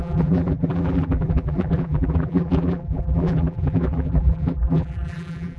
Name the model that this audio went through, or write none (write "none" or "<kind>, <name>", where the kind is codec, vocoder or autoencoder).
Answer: vocoder, BigVGAN v2